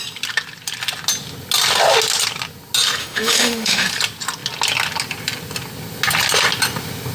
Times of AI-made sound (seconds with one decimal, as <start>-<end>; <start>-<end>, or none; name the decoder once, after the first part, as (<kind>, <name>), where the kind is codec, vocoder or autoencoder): 3.0-3.9 (autoencoder, DAC-VAE)